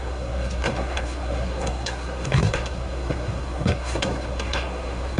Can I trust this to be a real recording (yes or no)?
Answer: no